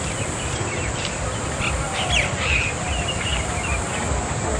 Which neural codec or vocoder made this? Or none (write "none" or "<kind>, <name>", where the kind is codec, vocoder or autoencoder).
none